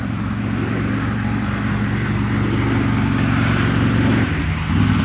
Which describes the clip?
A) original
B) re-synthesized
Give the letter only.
A